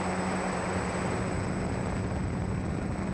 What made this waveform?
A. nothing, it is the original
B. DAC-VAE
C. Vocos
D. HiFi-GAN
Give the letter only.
A